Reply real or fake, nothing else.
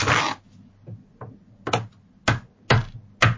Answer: real